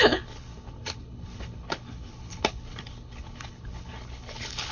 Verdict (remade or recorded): remade